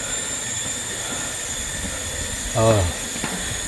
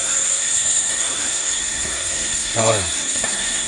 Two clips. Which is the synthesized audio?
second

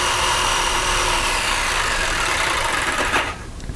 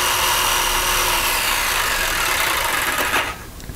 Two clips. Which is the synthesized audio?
first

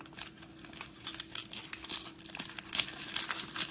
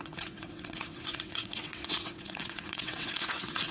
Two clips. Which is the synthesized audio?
second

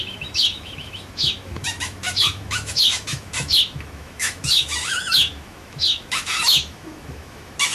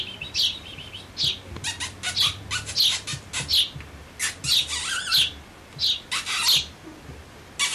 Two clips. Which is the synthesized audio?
first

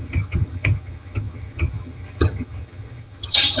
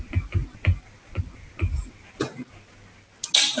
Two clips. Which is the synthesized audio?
first